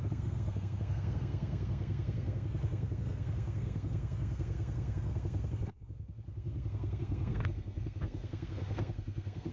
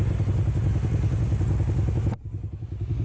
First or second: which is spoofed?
first